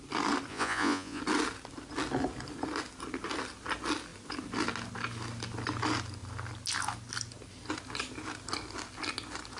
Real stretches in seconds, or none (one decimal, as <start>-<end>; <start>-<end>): 0.0-0.5; 1.2-9.6

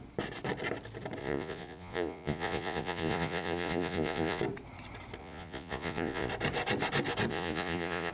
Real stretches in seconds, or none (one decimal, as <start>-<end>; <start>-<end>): 0.0-1.2; 4.4-5.2; 6.3-7.3

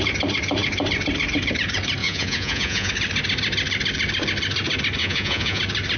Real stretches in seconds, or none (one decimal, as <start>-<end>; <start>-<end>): 0.0-2.0; 2.9-5.0; 5.6-6.0

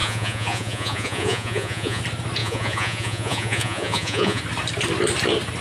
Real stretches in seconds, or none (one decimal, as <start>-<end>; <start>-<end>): 2.0-2.4; 4.4-5.6

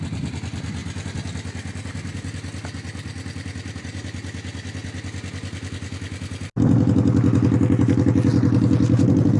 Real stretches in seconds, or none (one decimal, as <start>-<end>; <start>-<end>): 0.0-9.4

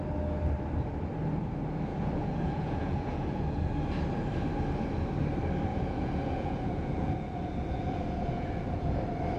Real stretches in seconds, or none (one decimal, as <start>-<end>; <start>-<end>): 0.0-1.9; 3.7-5.7; 9.0-9.4

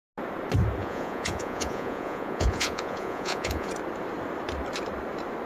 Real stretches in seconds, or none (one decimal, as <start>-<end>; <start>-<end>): 0.0-0.8; 3.7-5.5